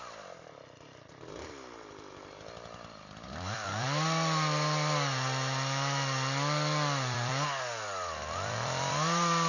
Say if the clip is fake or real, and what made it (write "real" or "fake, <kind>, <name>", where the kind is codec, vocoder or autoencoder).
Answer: fake, vocoder, BigVGAN v2